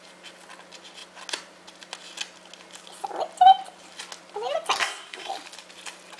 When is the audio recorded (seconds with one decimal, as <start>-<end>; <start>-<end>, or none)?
0.0-4.8; 5.3-6.2